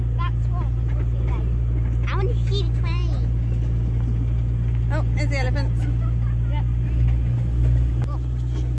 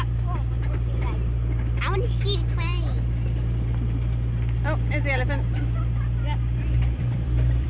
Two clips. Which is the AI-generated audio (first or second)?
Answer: second